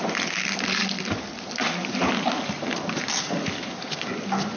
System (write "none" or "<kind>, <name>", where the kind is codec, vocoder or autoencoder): none